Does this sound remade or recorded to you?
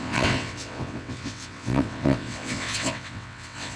remade